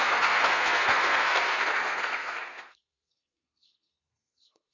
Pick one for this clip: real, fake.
fake